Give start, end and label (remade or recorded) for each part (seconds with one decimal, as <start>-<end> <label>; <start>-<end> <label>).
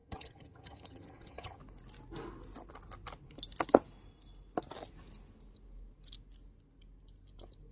0.0-1.6 remade; 1.6-7.7 recorded